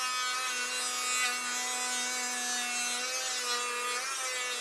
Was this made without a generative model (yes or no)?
yes